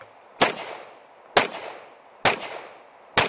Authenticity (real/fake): real